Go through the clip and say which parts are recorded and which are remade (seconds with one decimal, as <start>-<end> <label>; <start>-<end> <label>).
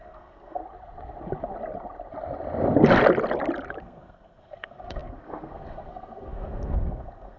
0.0-0.6 remade; 0.6-3.8 recorded; 3.8-7.4 remade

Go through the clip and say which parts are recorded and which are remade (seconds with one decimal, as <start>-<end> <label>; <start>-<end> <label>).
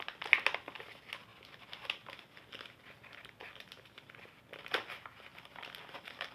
0.0-6.3 recorded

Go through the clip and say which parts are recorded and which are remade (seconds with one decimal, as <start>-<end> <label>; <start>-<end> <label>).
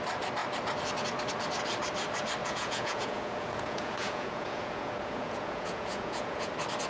0.0-2.4 recorded; 2.4-6.5 remade; 6.5-6.9 recorded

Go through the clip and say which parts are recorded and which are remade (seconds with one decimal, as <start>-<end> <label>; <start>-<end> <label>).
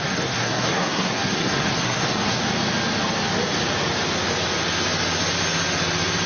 0.0-2.4 remade; 2.4-6.3 recorded